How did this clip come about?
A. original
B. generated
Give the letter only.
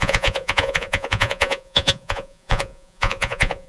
B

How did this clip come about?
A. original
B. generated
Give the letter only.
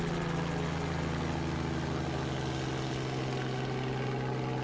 A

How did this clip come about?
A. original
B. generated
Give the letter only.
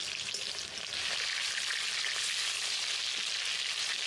A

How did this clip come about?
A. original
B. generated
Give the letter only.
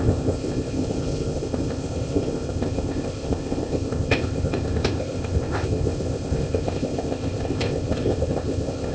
B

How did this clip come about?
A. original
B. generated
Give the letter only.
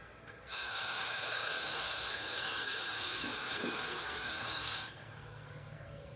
B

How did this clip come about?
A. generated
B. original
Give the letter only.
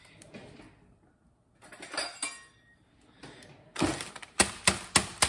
B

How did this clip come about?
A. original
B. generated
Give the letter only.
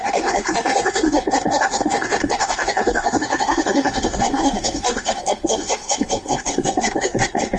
B